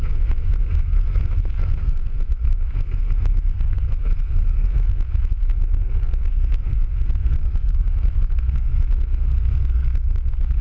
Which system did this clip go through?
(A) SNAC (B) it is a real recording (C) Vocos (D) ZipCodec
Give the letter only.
A